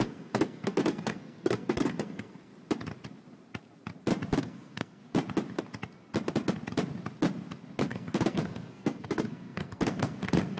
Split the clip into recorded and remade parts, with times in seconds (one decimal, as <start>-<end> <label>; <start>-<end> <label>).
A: 0.0-2.5 remade; 2.5-4.4 recorded; 4.4-5.0 remade; 5.0-7.8 recorded; 7.8-10.6 remade